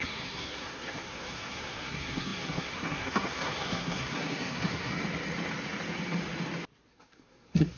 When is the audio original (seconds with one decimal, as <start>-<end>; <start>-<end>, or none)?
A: 4.9-6.9